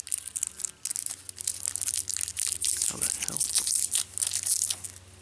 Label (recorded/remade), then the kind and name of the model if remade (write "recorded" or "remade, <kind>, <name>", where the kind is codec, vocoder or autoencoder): recorded